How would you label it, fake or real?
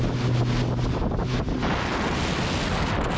real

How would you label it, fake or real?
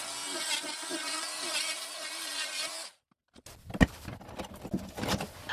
real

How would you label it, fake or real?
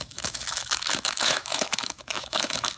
fake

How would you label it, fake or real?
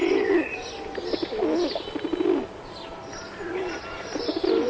real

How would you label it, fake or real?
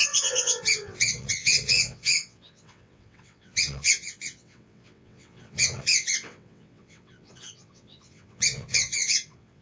fake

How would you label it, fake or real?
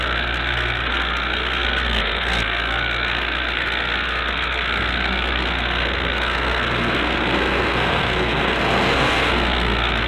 fake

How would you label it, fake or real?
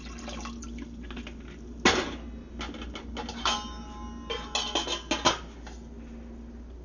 real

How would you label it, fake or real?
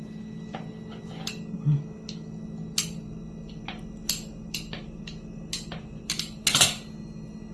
real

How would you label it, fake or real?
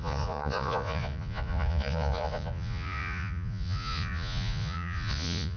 fake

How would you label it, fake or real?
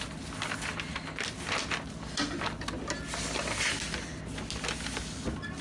real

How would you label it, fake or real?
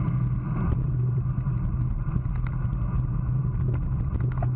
real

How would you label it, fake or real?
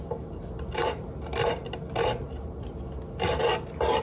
real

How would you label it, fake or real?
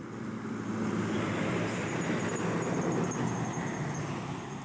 real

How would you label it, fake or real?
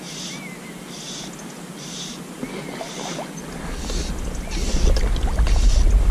real